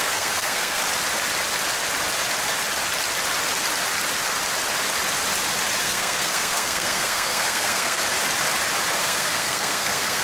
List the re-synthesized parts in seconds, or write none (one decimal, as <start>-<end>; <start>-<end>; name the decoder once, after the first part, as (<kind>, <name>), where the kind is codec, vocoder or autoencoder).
0.0-0.8 (codec, SNAC); 5.8-8.0; 9.0-10.2